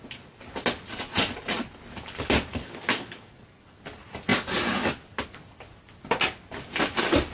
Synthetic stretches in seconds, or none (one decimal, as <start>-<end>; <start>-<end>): 2.5-3.3